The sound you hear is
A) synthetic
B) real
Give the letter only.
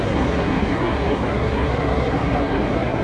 A